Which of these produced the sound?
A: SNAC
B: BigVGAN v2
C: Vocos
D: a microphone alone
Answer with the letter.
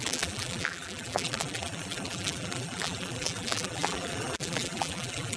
B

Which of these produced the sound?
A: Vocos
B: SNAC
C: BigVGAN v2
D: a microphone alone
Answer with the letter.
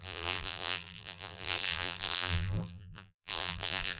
C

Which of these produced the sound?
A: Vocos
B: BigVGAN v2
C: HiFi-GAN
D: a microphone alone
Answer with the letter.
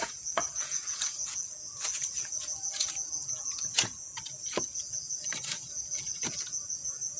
A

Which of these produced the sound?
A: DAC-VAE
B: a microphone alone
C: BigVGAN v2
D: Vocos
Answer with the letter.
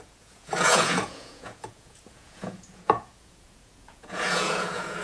D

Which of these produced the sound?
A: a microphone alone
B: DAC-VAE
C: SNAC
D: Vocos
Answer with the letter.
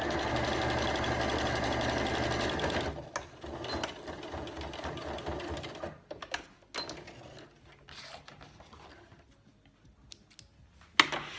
A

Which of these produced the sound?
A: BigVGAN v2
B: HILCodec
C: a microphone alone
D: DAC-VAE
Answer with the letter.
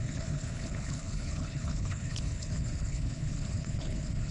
B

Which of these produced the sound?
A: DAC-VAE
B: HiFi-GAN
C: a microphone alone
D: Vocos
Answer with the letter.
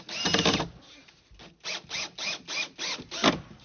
C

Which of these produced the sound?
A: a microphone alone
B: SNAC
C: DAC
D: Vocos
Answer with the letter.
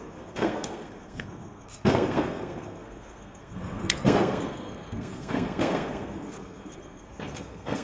B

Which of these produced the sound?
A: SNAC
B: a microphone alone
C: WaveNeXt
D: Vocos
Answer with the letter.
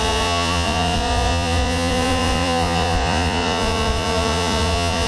D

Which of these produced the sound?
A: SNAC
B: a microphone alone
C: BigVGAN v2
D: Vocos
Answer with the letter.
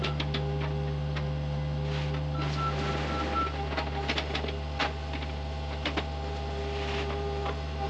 B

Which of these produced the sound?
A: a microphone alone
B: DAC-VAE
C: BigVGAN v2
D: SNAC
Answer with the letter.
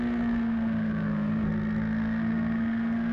D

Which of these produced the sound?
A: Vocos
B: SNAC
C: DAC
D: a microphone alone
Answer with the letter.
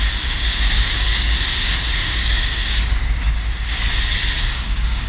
C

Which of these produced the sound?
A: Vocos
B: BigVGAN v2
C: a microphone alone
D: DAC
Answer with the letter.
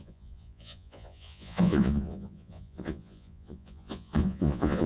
A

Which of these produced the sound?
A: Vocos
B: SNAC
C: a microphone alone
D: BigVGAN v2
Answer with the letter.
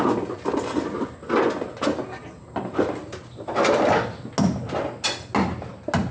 C